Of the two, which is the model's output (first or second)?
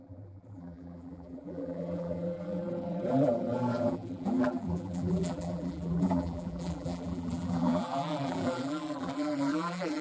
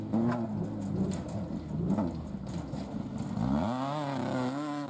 first